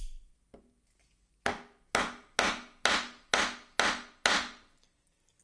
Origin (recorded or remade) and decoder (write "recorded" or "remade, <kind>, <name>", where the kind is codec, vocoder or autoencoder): recorded